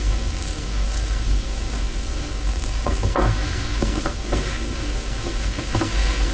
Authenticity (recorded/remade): remade